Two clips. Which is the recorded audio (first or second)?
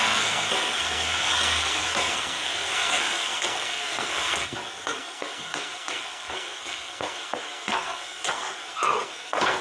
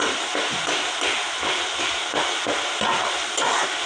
second